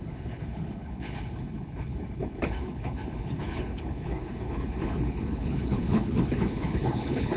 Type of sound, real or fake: fake